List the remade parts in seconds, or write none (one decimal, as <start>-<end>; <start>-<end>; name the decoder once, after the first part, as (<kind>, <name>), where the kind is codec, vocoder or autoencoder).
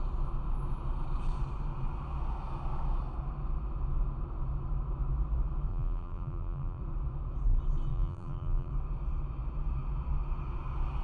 5.7-6.8 (vocoder, BigVGAN v2); 7.9-8.7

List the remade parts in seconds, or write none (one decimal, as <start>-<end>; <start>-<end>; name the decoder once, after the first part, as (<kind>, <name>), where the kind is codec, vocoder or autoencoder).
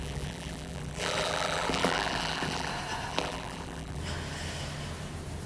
0.0-2.7 (vocoder, BigVGAN v2); 3.1-4.0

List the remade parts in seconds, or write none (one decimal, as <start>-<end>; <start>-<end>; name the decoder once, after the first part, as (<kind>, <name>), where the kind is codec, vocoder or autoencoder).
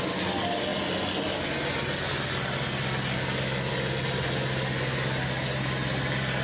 none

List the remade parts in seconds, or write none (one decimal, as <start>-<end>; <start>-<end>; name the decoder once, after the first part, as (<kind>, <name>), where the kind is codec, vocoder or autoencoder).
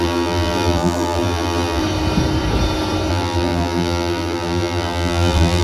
0.0-1.8 (vocoder, BigVGAN v2); 3.1-5.6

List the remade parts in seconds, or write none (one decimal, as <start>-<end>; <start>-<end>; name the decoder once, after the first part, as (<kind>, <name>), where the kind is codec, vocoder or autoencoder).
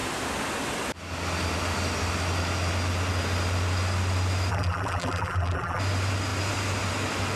4.5-5.8 (vocoder, BigVGAN v2)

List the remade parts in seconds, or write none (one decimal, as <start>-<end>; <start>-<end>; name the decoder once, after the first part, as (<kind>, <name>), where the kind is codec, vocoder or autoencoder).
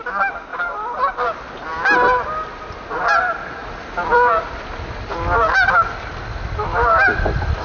0.5-1.1 (vocoder, BigVGAN v2); 3.6-5.1